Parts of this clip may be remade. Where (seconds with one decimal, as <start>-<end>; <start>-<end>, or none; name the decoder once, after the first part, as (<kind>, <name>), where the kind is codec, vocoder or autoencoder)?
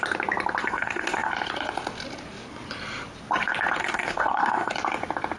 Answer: 0.6-1.3 (codec, SNAC); 3.8-4.7